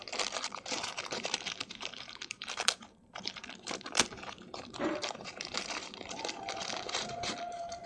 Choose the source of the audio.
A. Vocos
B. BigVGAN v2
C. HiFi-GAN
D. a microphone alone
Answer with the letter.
B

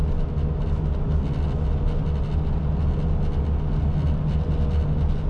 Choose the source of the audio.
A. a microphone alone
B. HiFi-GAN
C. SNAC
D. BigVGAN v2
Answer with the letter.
A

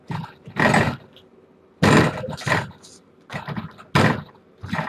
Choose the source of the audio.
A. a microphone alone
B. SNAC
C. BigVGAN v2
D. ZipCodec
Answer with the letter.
A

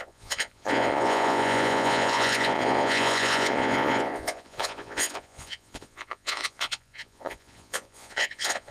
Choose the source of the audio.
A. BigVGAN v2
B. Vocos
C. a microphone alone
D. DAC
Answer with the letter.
B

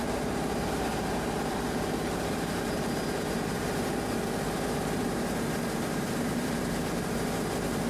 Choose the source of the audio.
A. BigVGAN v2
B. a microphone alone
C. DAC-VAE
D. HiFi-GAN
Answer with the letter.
A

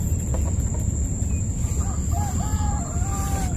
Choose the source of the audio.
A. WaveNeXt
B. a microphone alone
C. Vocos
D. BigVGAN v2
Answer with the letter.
B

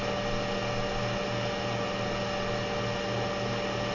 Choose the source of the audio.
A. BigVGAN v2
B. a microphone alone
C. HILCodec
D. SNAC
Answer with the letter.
B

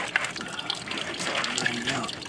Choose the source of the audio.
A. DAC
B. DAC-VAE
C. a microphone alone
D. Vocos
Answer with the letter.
C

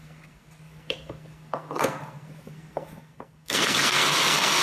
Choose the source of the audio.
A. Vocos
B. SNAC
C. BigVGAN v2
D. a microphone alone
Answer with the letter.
B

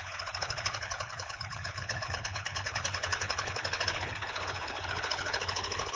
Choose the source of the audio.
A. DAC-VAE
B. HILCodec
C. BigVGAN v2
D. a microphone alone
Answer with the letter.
B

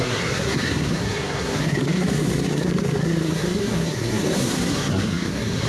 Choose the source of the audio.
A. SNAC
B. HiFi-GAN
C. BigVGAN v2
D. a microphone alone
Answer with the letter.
A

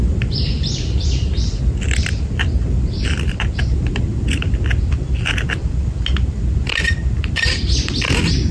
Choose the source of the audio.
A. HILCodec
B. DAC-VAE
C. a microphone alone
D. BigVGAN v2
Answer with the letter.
D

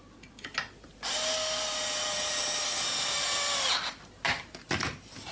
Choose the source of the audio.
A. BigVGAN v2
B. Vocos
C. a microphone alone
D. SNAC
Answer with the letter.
C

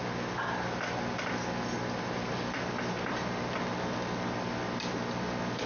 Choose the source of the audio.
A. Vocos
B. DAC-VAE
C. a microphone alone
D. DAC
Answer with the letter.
C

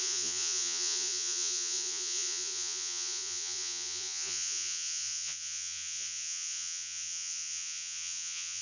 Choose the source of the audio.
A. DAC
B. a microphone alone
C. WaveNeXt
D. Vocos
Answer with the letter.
D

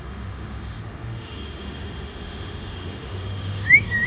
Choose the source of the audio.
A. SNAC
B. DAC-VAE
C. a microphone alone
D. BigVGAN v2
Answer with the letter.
B